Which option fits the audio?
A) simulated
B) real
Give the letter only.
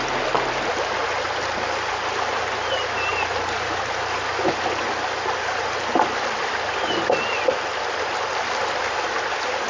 B